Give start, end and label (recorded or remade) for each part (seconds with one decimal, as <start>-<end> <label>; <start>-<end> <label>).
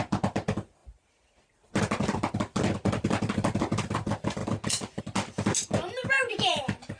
0.0-6.0 recorded; 6.0-6.6 remade; 6.6-7.0 recorded